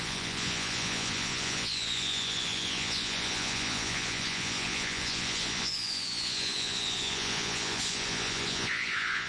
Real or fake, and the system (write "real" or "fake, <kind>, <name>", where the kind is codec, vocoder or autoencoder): fake, vocoder, Vocos